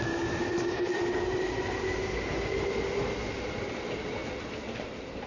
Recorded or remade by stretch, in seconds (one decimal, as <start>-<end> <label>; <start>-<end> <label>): 0.0-4.2 recorded; 4.2-5.3 remade